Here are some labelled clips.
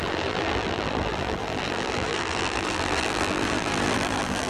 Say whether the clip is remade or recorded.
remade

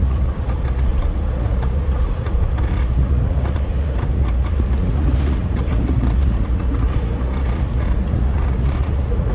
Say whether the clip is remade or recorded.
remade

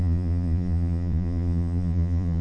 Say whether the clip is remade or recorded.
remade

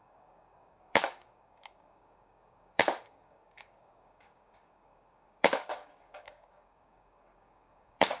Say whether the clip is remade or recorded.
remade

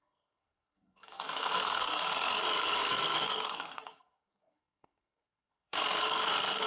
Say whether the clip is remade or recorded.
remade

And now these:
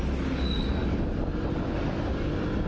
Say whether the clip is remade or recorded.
recorded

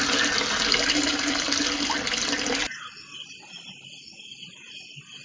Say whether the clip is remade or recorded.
recorded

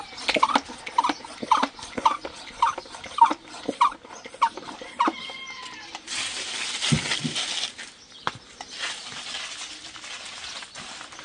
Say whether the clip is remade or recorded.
recorded